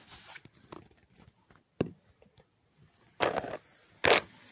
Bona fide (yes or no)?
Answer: yes